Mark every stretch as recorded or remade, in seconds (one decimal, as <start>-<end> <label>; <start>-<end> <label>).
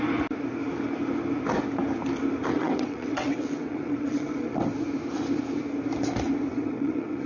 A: 0.0-2.5 recorded; 2.5-4.6 remade; 4.6-6.5 recorded; 6.5-7.3 remade